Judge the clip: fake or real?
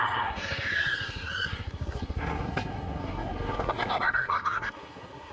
fake